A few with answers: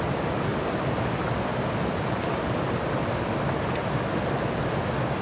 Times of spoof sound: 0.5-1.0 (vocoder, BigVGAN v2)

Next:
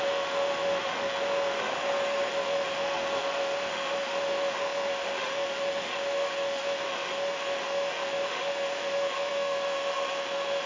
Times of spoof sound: 0.0-1.7 (autoencoder, DAC-VAE); 2.3-10.7

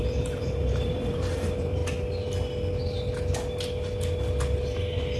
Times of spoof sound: 0.0-1.8 (vocoder, BigVGAN v2)

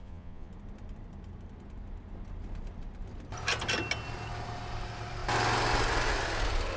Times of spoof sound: 0.0-0.5 (vocoder, Vocos)